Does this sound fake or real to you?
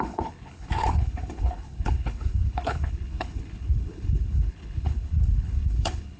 fake